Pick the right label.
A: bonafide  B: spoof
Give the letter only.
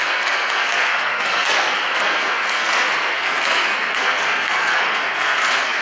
B